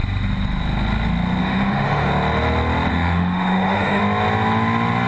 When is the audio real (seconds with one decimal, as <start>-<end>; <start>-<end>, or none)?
0.0-1.4; 2.1-2.9; 4.0-5.1